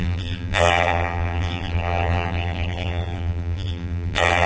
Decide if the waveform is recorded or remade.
remade